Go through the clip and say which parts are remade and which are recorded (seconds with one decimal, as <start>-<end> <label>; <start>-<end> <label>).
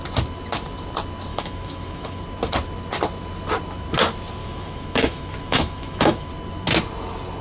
0.0-1.3 recorded; 1.3-2.2 remade; 2.2-4.4 recorded; 4.4-6.3 remade; 6.3-7.4 recorded